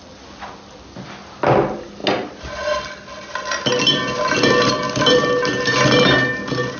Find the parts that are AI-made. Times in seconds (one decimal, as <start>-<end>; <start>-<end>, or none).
none